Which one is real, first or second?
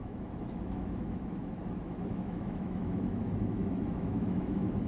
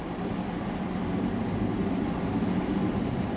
second